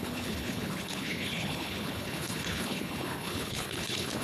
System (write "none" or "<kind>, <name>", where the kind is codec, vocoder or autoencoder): codec, HILCodec